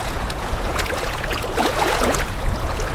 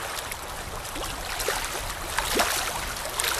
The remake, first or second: first